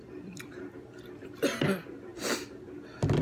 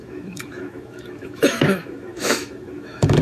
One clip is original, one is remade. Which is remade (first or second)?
second